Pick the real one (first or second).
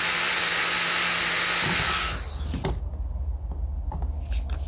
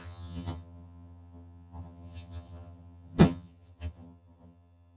first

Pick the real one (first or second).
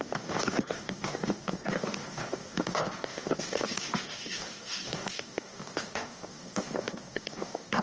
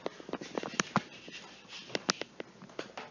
second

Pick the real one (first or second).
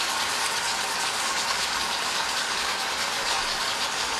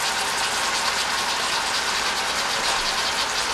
second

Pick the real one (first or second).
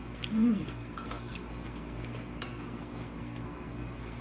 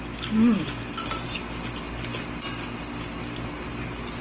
second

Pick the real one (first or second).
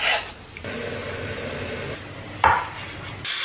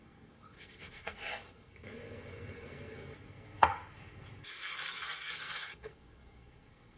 first